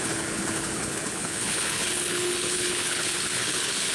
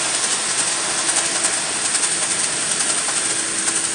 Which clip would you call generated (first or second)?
first